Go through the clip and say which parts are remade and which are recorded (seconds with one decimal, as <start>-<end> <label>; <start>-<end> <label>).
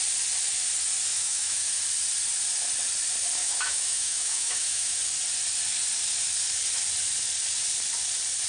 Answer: 0.0-1.1 recorded; 1.1-1.8 remade; 1.8-3.4 recorded; 3.4-5.0 remade; 5.0-8.5 recorded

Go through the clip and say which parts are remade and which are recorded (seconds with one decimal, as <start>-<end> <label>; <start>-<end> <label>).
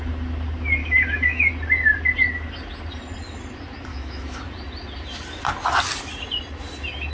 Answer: 0.0-0.8 recorded; 0.8-1.5 remade; 1.5-3.9 recorded; 3.9-4.4 remade; 4.4-7.1 recorded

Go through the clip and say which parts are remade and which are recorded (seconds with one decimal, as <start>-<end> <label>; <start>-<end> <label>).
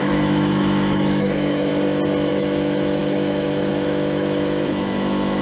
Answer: 0.0-1.7 remade; 1.7-2.3 recorded; 2.3-5.4 remade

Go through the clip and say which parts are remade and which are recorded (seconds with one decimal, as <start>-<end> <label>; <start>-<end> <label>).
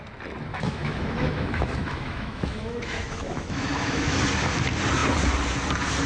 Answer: 0.0-0.5 recorded; 0.5-4.2 remade; 4.2-6.1 recorded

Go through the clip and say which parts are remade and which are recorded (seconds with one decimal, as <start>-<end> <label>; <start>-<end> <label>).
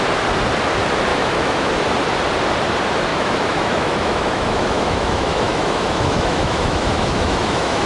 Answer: 0.0-1.1 recorded; 1.1-1.7 remade; 1.7-3.1 recorded; 3.1-7.9 remade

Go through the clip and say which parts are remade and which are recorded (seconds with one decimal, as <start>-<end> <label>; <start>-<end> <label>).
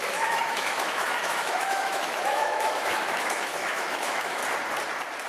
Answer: 0.0-4.4 remade; 4.4-5.3 recorded